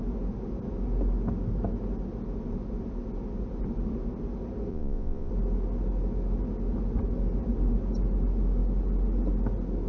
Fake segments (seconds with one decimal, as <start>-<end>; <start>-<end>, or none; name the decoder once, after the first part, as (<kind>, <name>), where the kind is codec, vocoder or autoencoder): 4.7-5.3 (vocoder, Vocos)